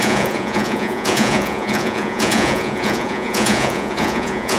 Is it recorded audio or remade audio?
remade